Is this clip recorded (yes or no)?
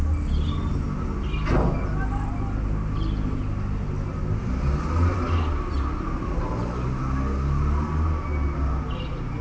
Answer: yes